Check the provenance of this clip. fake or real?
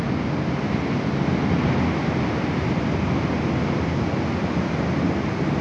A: real